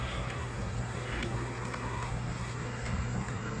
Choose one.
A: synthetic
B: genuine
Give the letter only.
A